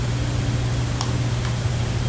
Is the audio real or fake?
real